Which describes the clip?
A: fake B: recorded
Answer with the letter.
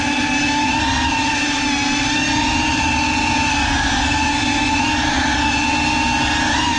B